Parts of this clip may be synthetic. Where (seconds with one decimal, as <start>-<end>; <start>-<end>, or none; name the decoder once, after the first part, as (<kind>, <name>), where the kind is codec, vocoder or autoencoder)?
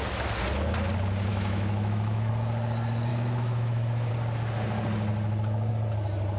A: 1.3-2.3 (autoencoder, DAC-VAE); 3.1-4.1